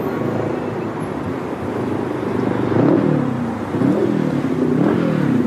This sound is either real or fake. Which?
real